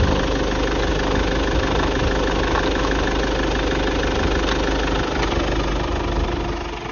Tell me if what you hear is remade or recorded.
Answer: recorded